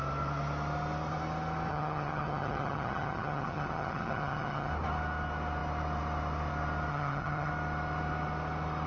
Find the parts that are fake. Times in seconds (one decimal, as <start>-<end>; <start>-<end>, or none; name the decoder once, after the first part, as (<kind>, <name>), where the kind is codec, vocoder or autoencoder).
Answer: 1.7-4.7 (vocoder, HiFi-GAN); 6.9-7.5

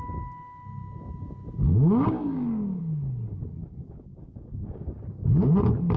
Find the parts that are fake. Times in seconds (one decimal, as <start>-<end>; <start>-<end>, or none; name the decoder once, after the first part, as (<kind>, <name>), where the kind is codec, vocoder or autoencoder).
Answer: 1.7-2.8 (codec, DAC); 3.6-5.0

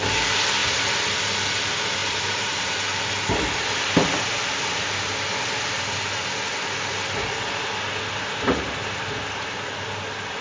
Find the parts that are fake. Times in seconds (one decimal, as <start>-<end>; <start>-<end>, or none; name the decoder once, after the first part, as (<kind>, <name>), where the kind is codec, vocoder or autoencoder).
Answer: 2.0-2.7 (vocoder, BigVGAN v2)